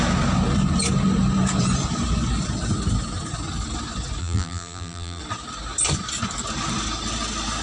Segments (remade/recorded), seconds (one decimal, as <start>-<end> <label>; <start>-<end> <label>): 0.0-4.2 recorded; 4.2-5.2 remade; 5.2-7.6 recorded